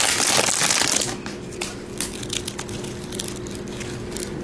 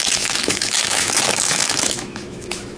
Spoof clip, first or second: second